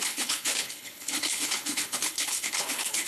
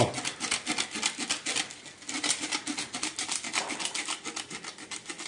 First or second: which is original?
second